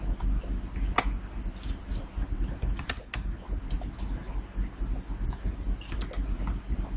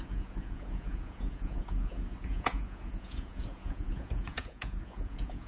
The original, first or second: first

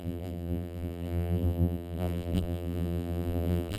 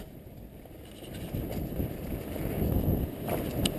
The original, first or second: second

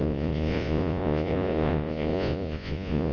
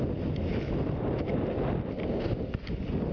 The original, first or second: second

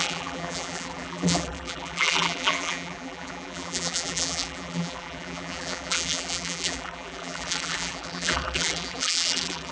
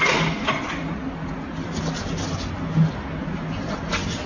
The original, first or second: second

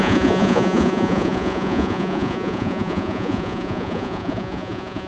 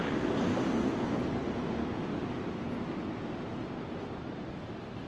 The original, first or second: second